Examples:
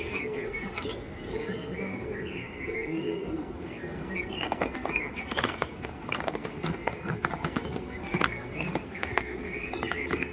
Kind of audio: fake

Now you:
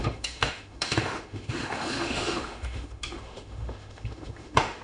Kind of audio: fake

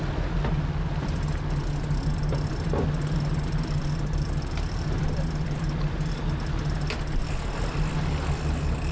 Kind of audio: real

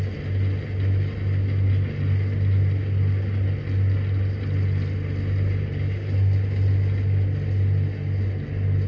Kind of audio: real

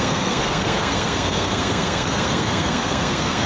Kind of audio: fake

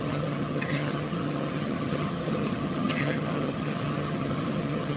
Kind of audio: fake